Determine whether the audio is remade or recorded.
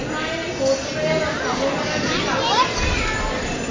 recorded